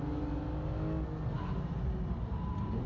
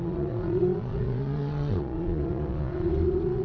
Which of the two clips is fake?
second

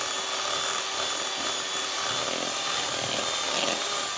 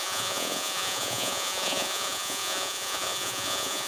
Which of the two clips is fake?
second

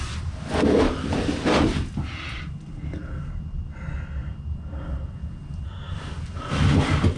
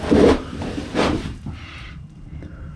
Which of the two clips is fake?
second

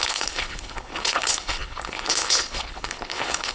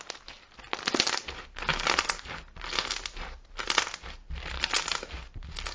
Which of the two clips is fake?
first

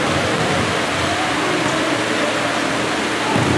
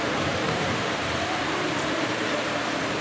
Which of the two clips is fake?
second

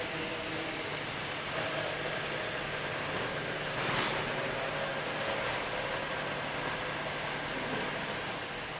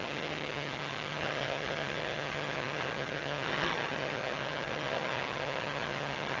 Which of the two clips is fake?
second